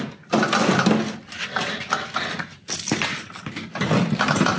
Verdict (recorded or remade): recorded